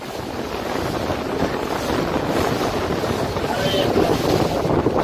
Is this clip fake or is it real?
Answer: real